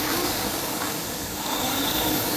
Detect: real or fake fake